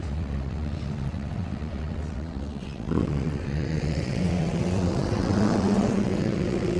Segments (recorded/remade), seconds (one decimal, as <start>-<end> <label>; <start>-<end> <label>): 0.0-6.8 remade